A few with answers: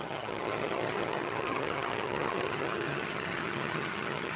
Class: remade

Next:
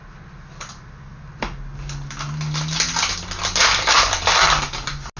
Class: recorded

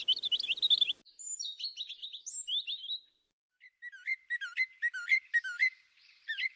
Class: recorded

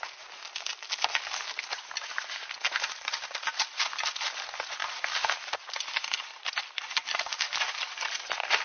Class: recorded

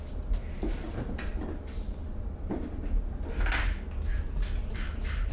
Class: recorded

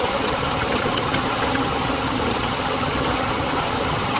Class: remade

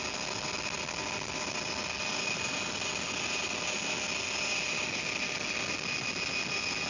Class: recorded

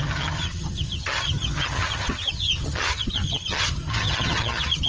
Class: remade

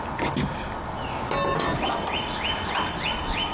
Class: recorded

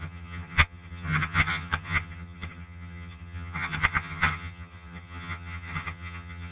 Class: remade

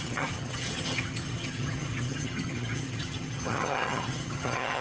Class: remade